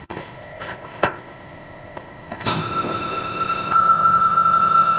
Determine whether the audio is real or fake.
fake